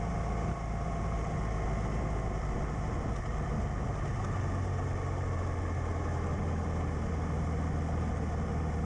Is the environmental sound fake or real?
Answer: real